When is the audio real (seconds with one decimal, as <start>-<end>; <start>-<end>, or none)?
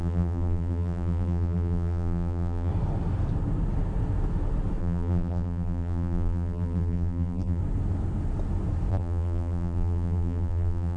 2.7-4.8; 7.6-8.9